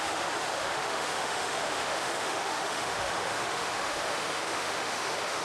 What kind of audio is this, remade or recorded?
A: remade